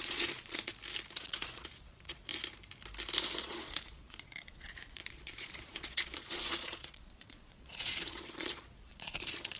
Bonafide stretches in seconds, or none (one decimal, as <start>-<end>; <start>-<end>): 0.7-1.2; 2.3-3.4